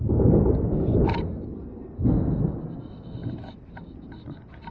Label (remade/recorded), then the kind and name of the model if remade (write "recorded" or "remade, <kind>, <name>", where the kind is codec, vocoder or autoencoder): recorded